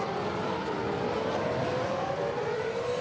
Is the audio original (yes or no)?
yes